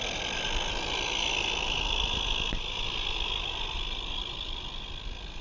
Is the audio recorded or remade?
recorded